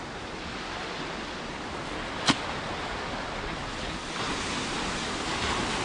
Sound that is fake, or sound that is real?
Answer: real